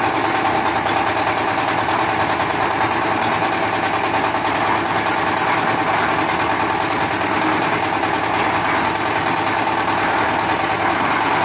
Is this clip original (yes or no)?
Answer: yes